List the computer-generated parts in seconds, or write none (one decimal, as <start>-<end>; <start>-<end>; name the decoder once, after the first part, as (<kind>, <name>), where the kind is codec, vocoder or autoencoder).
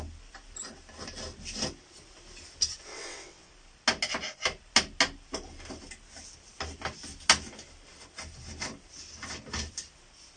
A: 2.9-3.5 (vocoder, WaveNeXt)